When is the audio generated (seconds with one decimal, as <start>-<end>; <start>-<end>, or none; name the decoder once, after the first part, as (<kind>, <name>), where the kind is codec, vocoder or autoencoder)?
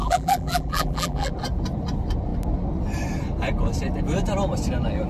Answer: 0.0-1.3 (vocoder, BigVGAN v2)